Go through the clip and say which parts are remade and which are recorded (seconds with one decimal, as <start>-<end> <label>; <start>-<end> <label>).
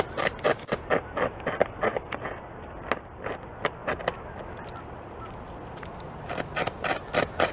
0.0-7.5 recorded